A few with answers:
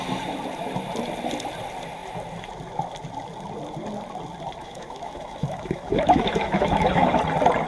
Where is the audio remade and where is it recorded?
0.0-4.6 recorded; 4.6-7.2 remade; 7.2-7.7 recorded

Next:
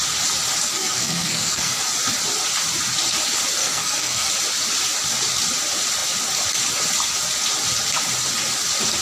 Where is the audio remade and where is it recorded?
0.0-0.7 recorded; 0.7-1.8 remade; 1.8-3.6 recorded; 3.6-4.3 remade; 4.3-9.0 recorded

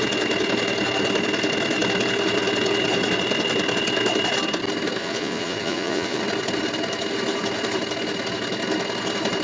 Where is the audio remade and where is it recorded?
0.0-5.0 recorded; 5.0-6.2 remade; 6.2-9.4 recorded

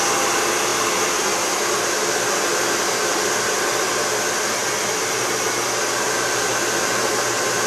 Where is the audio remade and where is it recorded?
0.0-7.7 recorded

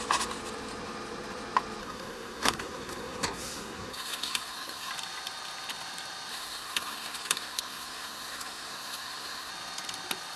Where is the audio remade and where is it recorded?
0.0-1.8 recorded; 1.8-4.9 remade; 4.9-6.3 recorded; 6.3-9.5 remade; 9.5-10.4 recorded